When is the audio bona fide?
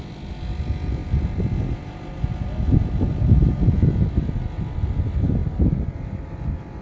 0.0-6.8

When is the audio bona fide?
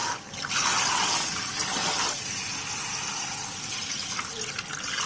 0.9-5.1